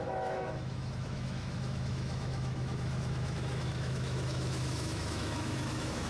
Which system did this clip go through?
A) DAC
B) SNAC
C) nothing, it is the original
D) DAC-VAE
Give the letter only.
D